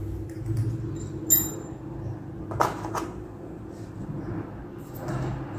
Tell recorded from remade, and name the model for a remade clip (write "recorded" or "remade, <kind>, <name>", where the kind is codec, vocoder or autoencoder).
recorded